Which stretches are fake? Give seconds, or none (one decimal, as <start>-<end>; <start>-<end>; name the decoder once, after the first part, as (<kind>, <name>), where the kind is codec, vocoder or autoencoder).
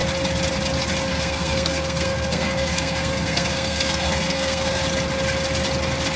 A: 1.1-4.8 (codec, SNAC)